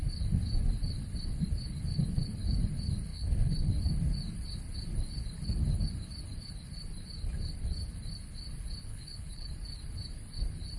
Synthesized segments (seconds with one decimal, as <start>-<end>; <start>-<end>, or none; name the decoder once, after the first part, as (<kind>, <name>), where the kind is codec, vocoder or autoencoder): 3.1-3.7 (codec, HILCodec); 8.9-9.5